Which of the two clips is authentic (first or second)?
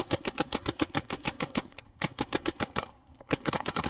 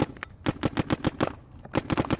second